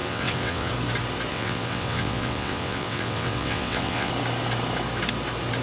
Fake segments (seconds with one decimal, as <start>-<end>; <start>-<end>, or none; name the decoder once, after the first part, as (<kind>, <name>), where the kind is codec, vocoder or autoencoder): 0.0-0.7 (vocoder, WaveNeXt); 1.3-4.1